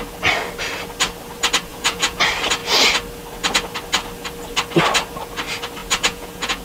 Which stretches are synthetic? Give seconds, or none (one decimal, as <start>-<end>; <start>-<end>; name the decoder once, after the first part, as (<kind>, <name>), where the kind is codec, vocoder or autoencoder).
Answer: 1.7-2.2 (vocoder, Vocos); 5.8-6.6